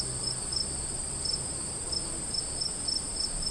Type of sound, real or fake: real